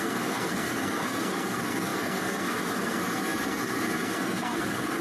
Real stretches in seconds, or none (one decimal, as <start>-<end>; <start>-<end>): none